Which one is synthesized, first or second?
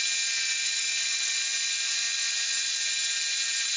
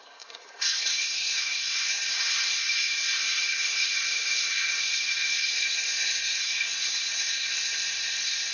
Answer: second